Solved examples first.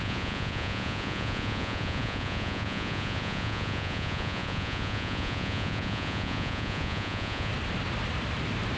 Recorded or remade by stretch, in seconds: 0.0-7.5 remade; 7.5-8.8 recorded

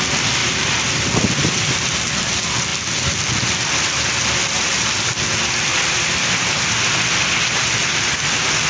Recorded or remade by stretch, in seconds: 0.0-0.4 recorded; 0.4-1.1 remade; 1.1-5.7 recorded; 5.7-6.6 remade; 6.6-8.7 recorded

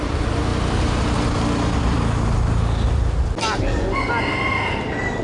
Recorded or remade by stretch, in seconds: 0.0-5.2 recorded

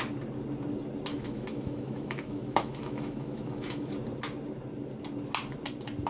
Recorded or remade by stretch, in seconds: 0.0-1.1 recorded; 1.1-3.9 remade; 3.9-6.1 recorded

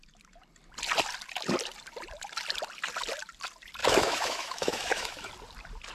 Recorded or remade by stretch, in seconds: 0.0-3.8 recorded; 3.8-5.3 remade; 5.3-5.9 recorded

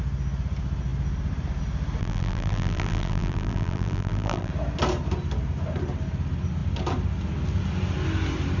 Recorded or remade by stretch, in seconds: 0.0-2.0 recorded; 2.0-4.5 remade; 4.5-8.6 recorded

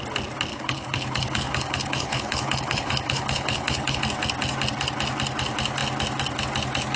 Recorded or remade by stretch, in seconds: 0.0-0.5 recorded; 0.5-4.0 remade; 4.0-7.0 recorded